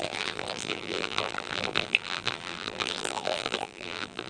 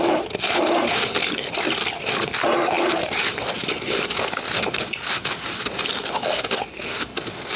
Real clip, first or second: second